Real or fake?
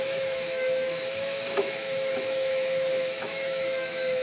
fake